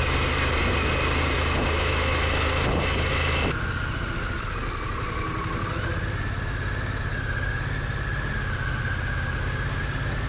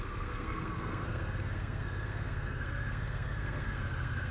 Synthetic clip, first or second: second